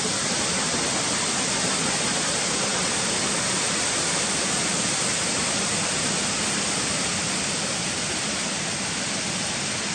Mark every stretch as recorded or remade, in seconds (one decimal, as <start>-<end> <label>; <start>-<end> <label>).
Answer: 0.0-2.7 recorded; 2.7-3.8 remade; 3.8-9.9 recorded